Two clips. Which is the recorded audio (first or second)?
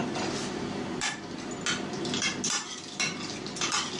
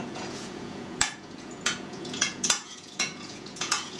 first